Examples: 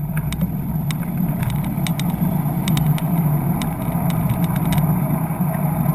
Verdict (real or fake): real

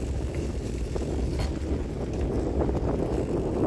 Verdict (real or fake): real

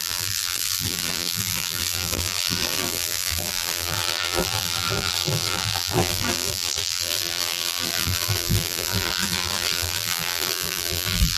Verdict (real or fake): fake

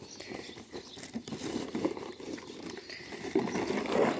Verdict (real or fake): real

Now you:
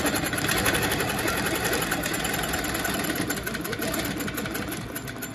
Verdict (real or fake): real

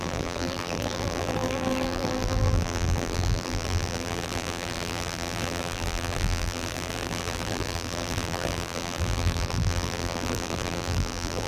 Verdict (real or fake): fake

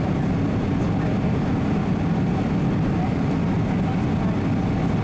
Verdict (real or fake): real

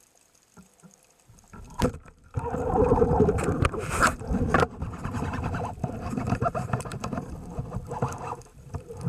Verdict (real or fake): fake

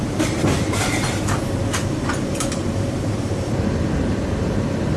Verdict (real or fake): fake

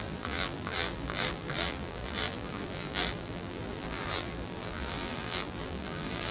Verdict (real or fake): fake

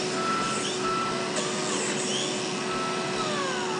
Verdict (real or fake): real